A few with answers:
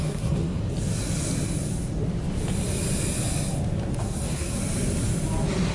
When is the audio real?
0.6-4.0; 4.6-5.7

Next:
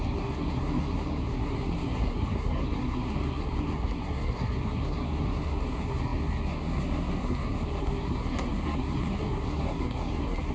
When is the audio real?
none

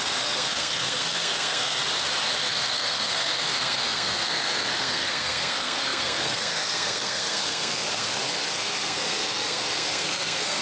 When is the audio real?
1.8-2.5

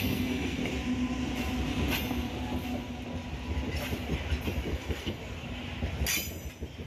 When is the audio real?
0.6-4.7; 5.2-6.9